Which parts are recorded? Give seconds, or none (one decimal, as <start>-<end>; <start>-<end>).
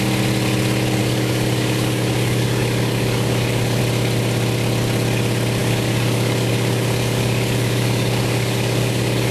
0.0-1.0; 3.8-5.6